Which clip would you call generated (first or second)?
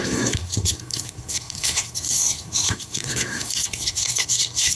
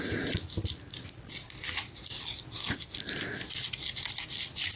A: first